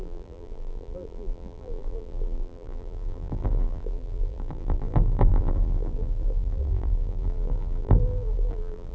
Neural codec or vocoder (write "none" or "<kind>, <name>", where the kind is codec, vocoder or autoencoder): vocoder, BigVGAN v2